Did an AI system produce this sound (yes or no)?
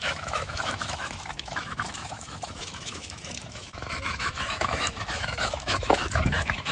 yes